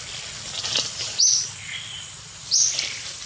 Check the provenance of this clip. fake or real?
real